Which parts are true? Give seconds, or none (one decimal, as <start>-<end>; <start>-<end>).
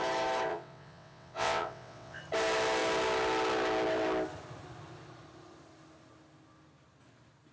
0.0-0.5; 2.2-7.5